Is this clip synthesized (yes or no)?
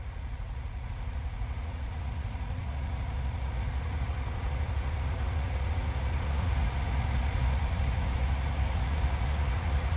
yes